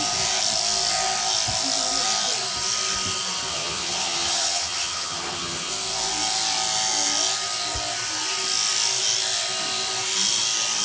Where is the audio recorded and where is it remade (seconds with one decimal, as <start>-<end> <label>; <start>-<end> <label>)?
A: 0.0-3.5 recorded; 3.5-5.7 remade; 5.7-10.8 recorded